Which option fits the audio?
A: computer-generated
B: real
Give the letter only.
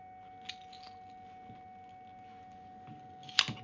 B